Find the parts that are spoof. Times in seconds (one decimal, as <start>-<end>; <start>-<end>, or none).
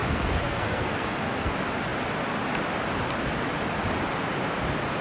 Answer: 0.0-1.5